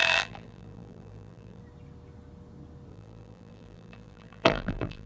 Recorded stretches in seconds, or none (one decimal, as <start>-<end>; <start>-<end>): 1.6-2.9